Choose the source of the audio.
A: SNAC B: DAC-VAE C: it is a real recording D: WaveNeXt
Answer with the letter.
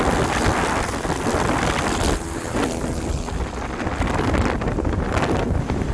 C